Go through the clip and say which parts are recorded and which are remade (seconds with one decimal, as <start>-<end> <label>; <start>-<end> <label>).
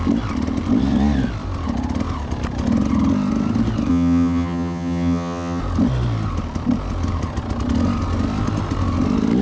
0.0-3.9 recorded; 3.9-5.6 remade; 5.6-9.4 recorded